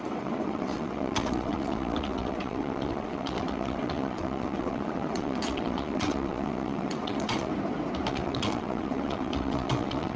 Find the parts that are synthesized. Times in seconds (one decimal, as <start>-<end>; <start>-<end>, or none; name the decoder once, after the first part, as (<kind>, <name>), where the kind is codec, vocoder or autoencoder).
0.0-7.5 (vocoder, WaveNeXt); 8.1-10.2